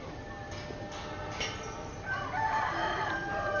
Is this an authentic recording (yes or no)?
yes